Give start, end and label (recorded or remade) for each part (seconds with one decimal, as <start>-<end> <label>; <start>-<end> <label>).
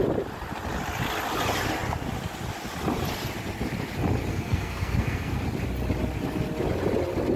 0.0-4.3 recorded; 4.3-5.4 remade; 5.4-7.4 recorded